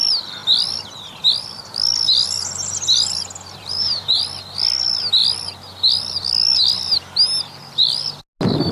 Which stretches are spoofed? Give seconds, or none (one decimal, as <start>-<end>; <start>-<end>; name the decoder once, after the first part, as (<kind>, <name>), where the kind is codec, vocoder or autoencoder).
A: 3.6-4.2 (vocoder, BigVGAN v2)